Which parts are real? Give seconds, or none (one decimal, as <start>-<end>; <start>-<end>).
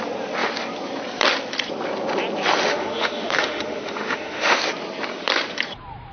0.0-2.7; 4.6-6.1